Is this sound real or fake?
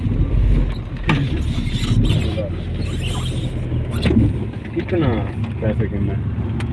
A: real